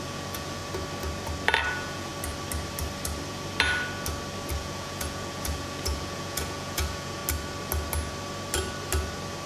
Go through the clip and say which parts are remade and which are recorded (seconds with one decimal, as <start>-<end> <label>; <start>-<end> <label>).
0.0-0.6 remade; 0.6-1.7 recorded; 1.7-2.1 remade; 2.1-4.5 recorded; 4.5-7.2 remade; 7.2-9.5 recorded